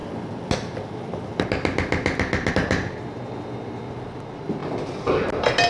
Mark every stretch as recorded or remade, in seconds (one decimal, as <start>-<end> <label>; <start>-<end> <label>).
0.0-5.7 recorded